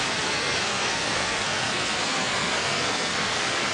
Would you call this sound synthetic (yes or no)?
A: yes